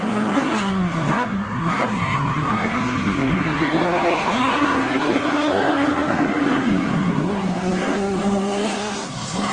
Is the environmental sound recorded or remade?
remade